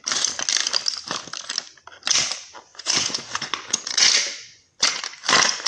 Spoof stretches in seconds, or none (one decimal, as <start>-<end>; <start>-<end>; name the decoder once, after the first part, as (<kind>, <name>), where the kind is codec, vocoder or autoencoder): 2.7-5.0 (vocoder, Vocos)